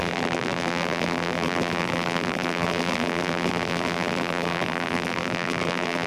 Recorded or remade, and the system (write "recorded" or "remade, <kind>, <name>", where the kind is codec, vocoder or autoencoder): remade, vocoder, BigVGAN v2